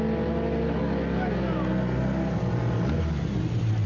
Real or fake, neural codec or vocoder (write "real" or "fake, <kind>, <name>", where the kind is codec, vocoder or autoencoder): real